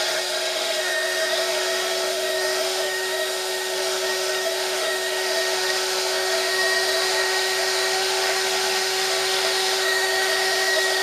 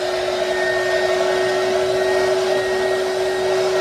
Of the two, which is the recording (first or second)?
second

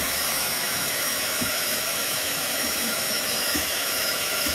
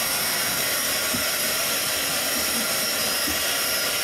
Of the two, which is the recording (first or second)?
second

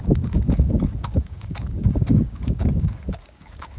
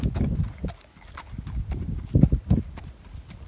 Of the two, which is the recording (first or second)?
second